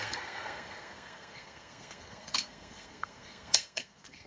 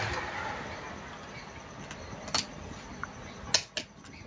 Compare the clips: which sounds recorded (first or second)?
second